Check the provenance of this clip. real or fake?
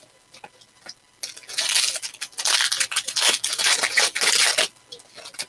real